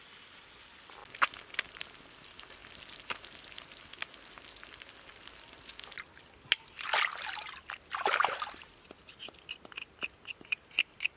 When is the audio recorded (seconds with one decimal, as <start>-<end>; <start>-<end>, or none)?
0.0-11.2